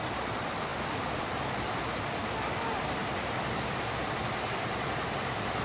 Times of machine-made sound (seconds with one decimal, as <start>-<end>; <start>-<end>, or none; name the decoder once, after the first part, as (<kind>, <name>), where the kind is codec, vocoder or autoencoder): 0.7-1.8 (vocoder, BigVGAN v2); 3.0-5.6